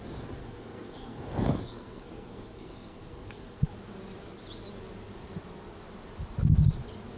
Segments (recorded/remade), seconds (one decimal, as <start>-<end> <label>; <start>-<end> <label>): 0.0-0.4 recorded; 0.4-3.7 remade; 3.7-7.2 recorded